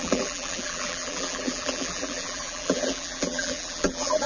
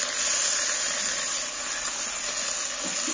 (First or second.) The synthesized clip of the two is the first